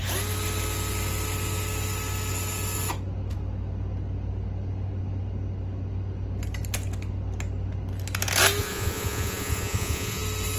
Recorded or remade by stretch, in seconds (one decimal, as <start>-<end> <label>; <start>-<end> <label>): 0.0-8.6 recorded; 8.6-10.2 remade; 10.2-10.6 recorded